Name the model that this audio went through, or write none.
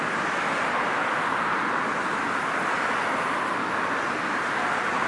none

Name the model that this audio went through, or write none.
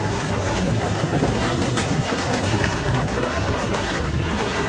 codec, SNAC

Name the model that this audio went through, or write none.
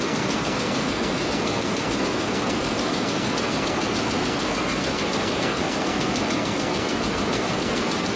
codec, SNAC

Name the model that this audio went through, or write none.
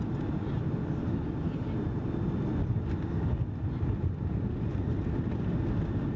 none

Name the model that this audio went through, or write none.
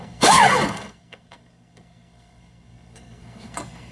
codec, SNAC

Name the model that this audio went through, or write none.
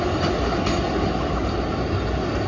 none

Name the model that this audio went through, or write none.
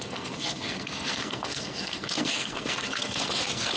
codec, SNAC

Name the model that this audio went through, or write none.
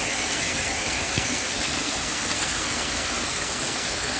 codec, SNAC